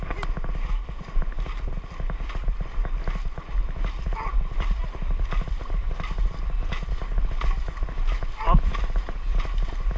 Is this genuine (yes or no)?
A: yes